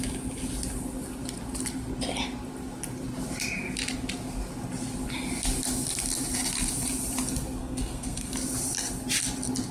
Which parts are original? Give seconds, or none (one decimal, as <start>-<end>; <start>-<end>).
0.0-7.6; 8.3-9.7